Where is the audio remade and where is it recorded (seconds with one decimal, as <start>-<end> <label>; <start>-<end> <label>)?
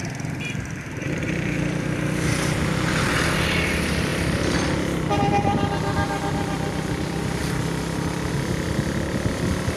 0.0-7.4 remade; 7.4-8.3 recorded; 8.3-9.8 remade